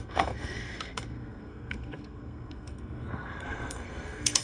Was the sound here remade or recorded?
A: remade